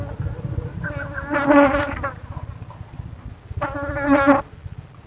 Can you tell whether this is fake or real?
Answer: real